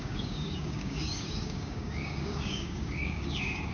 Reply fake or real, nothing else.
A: fake